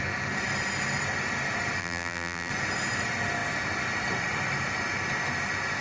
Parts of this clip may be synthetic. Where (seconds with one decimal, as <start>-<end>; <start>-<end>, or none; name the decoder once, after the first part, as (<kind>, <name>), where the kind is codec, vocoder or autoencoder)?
1.8-2.5 (vocoder, BigVGAN v2)